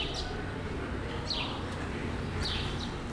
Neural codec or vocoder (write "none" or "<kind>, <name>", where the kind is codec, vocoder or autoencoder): none